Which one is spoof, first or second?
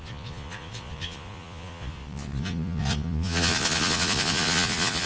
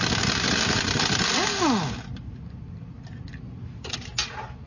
first